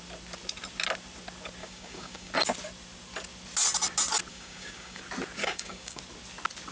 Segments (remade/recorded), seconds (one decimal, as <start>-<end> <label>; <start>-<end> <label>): 0.0-1.6 recorded; 1.6-2.3 remade; 2.3-4.3 recorded; 4.3-5.0 remade; 5.0-5.4 recorded; 5.4-6.0 remade; 6.0-6.7 recorded

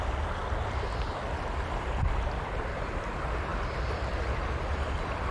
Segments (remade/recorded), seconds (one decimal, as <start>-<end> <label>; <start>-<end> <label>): 0.0-5.3 recorded